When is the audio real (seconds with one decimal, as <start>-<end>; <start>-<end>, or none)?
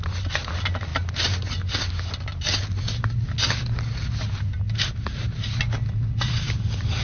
0.0-7.0